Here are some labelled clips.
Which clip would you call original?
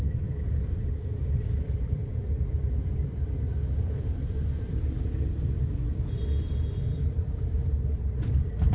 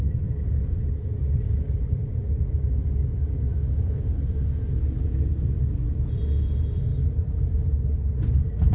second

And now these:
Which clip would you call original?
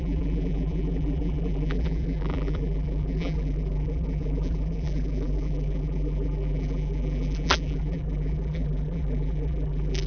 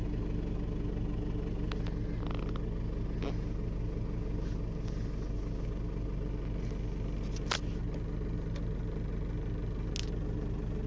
second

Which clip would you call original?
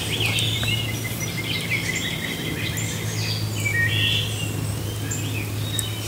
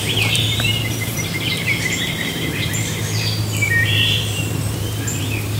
first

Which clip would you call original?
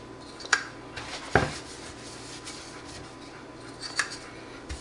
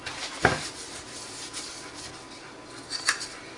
first